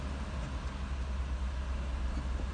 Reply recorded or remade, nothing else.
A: recorded